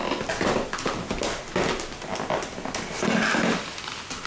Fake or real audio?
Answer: real